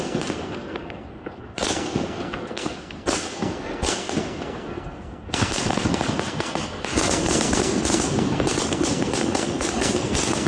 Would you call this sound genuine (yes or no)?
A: no